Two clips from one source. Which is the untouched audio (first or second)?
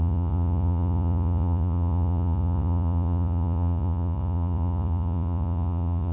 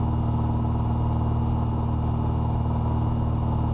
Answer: second